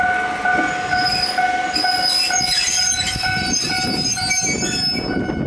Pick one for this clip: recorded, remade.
recorded